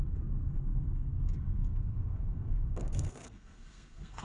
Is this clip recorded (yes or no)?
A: no